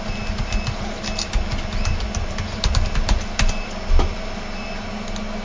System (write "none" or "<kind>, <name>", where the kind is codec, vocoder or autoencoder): none